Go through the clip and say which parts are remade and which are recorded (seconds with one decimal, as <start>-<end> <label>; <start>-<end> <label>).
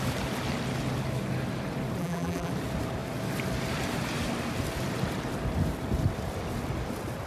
0.0-2.0 recorded; 2.0-2.5 remade; 2.5-7.3 recorded